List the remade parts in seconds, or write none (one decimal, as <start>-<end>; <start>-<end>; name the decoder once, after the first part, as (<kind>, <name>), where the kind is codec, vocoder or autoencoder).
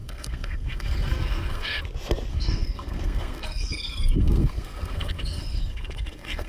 0.0-1.8 (codec, SNAC); 2.3-6.5